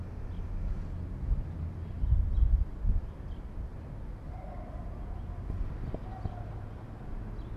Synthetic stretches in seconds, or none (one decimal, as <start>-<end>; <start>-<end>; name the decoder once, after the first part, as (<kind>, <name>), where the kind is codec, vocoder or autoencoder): none